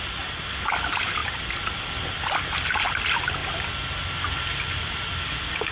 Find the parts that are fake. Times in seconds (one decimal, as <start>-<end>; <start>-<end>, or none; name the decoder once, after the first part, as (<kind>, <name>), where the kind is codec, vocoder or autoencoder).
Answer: none